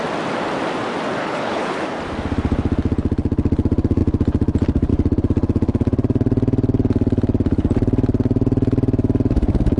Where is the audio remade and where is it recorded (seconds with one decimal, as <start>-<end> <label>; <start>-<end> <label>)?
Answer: 0.0-1.2 recorded; 1.2-1.8 remade; 1.8-9.8 recorded